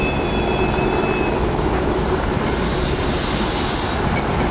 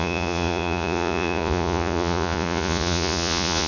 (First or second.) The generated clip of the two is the second